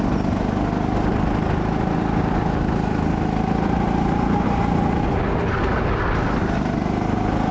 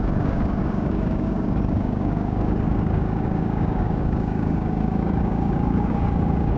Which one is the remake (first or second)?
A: second